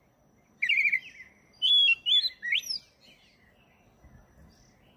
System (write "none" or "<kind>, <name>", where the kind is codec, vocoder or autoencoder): none